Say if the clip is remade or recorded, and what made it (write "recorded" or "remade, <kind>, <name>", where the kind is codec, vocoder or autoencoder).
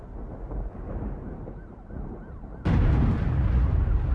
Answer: recorded